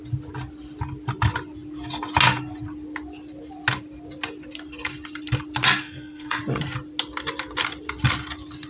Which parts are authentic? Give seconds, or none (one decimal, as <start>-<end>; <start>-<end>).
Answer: 0.0-5.8; 6.4-8.7